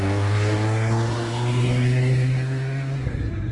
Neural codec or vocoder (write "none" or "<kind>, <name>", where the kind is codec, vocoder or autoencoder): codec, SNAC